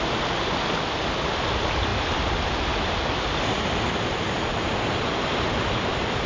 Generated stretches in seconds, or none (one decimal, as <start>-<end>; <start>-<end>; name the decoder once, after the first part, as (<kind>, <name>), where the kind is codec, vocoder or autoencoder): none